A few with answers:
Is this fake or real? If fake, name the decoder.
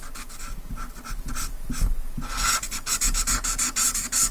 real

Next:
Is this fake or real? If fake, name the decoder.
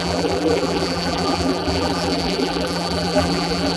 fake, vocoder, BigVGAN v2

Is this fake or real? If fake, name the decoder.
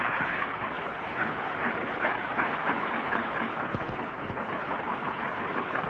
fake, codec, HILCodec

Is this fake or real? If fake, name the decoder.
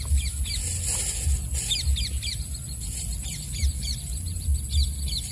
real